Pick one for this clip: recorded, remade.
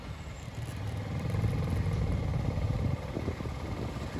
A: recorded